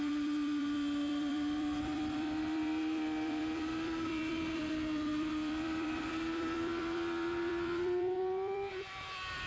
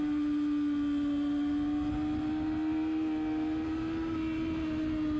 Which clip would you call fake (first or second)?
first